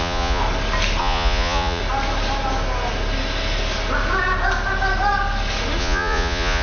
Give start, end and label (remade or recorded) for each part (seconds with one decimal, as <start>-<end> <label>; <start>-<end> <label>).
0.0-0.4 remade; 0.4-1.0 recorded; 1.0-1.8 remade; 1.8-5.8 recorded; 5.8-6.6 remade